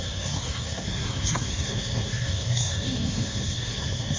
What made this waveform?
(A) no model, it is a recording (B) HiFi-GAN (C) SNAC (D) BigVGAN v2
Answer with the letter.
C